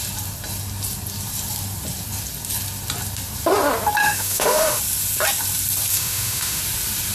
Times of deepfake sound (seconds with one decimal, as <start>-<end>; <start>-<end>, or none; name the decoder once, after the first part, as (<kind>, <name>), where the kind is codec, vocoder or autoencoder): 4.0-4.8 (autoencoder, DAC-VAE); 5.9-6.6